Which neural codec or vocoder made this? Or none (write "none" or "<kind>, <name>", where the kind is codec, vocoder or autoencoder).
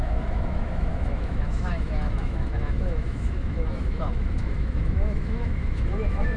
autoencoder, DAC-VAE